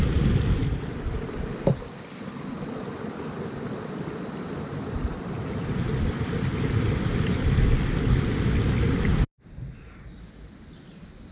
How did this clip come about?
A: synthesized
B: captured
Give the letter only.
B